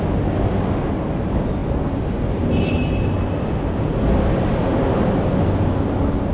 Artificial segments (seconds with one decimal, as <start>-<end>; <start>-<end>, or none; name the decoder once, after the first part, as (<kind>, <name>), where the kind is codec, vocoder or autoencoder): none